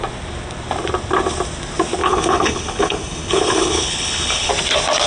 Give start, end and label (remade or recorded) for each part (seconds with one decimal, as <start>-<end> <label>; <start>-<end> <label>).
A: 0.0-2.0 recorded; 2.0-4.5 remade; 4.5-5.1 recorded